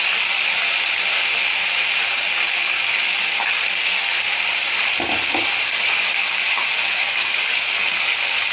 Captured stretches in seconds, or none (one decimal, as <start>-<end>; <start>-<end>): 0.0-5.5; 6.1-7.0; 7.8-8.5